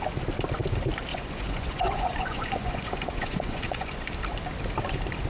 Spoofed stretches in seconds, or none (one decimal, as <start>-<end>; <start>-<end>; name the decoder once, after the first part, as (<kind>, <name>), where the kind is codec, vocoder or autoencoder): 1.1-4.1 (vocoder, Vocos)